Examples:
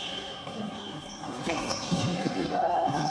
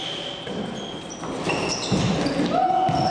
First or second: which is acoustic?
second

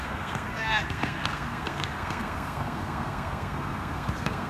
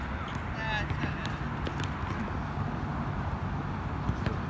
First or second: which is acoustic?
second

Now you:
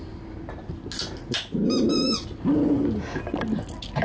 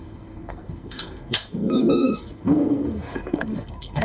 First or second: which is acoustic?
first